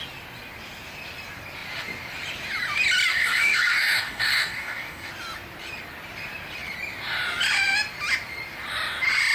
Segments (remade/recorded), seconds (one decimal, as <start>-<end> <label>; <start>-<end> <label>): 0.0-3.1 recorded; 3.1-5.1 remade; 5.1-9.3 recorded